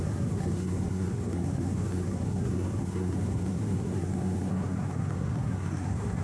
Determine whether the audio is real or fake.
fake